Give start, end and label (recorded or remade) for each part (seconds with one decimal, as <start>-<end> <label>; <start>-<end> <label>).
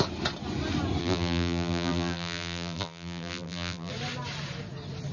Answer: 0.0-1.0 recorded; 1.0-3.9 remade; 3.9-5.1 recorded